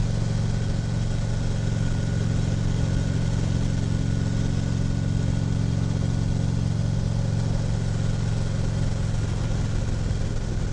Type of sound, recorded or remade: recorded